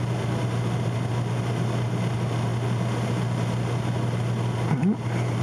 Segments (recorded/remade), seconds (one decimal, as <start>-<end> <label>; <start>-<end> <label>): 0.0-5.4 recorded